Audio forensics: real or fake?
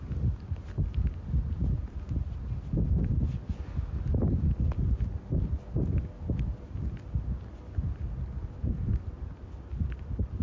real